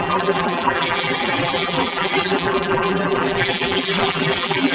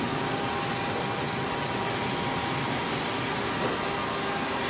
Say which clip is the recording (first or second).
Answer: second